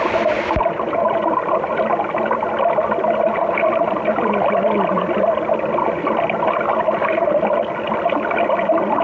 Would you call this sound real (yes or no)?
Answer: yes